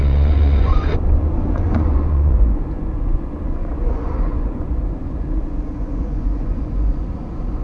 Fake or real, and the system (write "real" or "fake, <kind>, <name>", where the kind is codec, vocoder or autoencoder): fake, vocoder, Vocos